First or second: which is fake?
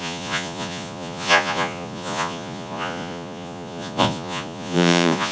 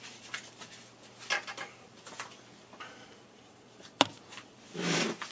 first